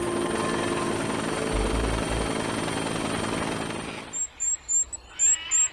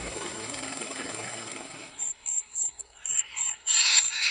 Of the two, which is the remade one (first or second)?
second